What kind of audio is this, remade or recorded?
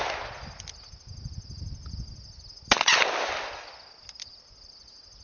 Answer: recorded